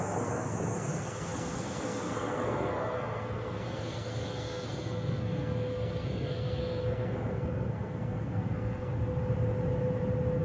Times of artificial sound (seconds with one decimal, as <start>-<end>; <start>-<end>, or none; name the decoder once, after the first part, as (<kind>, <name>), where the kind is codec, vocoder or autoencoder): 0.0-8.9 (codec, SNAC)